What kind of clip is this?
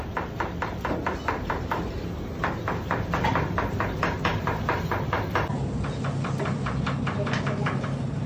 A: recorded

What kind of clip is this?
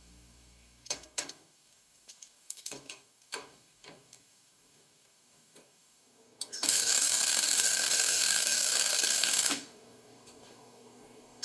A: remade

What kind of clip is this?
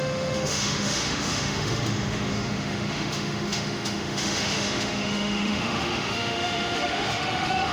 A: remade